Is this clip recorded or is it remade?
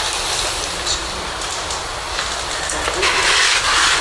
recorded